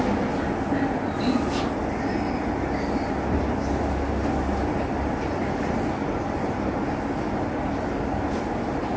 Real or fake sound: real